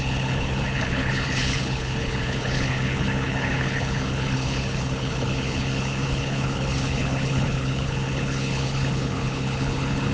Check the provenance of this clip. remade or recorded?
remade